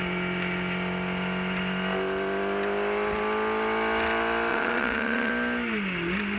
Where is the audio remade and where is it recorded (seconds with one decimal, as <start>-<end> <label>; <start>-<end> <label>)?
0.0-4.5 recorded; 4.5-5.3 remade; 5.3-6.4 recorded